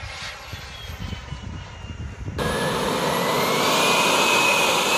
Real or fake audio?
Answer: real